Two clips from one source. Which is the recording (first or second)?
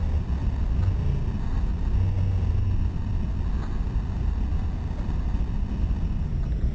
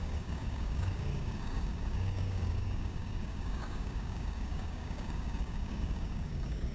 first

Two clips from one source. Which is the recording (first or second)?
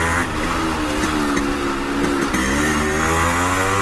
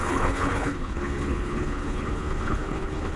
first